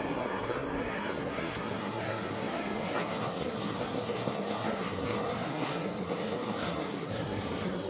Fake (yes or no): yes